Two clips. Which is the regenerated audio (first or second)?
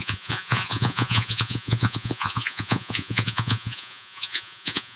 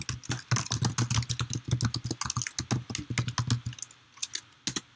first